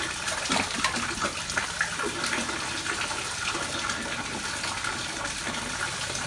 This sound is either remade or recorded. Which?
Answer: recorded